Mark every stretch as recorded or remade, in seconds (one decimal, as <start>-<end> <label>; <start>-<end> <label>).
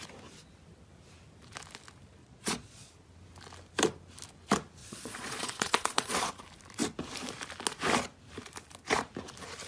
0.0-2.2 recorded; 2.2-2.9 remade; 2.9-4.8 recorded; 4.8-6.3 remade; 6.3-9.7 recorded